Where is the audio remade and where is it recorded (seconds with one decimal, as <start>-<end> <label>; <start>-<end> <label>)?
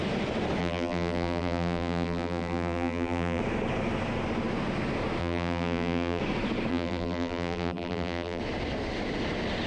0.0-0.6 recorded; 0.6-3.4 remade; 3.4-5.2 recorded; 5.2-6.2 remade; 6.2-6.7 recorded; 6.7-8.4 remade; 8.4-9.7 recorded